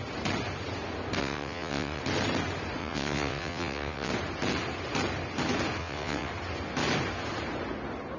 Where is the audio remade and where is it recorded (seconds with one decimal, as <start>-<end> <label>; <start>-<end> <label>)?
0.0-1.2 recorded; 1.2-2.0 remade; 2.0-2.8 recorded; 2.8-4.1 remade; 4.1-5.8 recorded; 5.8-6.3 remade; 6.3-8.2 recorded